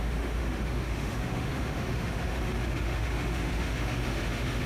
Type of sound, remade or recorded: remade